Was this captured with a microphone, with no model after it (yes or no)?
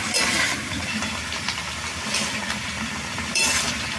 no